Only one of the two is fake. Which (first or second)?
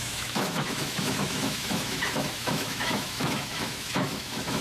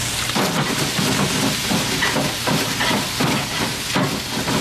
first